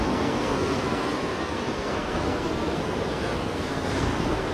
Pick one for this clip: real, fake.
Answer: fake